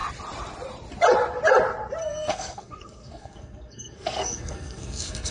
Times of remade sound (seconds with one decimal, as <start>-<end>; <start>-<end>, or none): 2.0-5.3